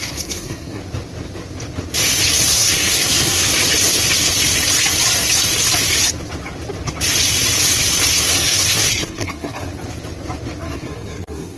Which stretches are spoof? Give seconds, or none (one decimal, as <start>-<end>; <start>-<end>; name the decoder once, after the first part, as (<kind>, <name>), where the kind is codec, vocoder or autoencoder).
0.0-0.8 (codec, SNAC); 2.5-3.5; 8.3-9.7; 10.6-11.6